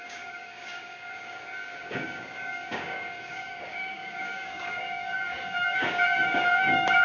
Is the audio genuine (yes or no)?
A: no